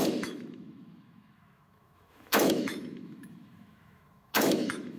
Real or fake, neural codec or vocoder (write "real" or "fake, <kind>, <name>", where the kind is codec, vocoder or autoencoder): fake, autoencoder, DAC-VAE